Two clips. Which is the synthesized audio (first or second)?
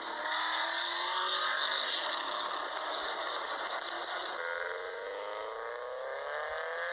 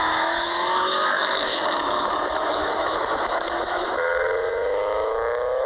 second